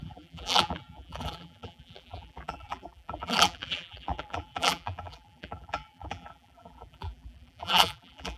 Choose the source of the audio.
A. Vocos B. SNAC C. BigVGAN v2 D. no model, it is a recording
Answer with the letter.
C